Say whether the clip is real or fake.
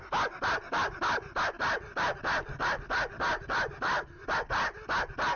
real